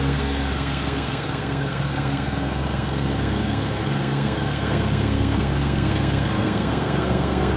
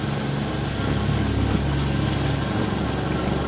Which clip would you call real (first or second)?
second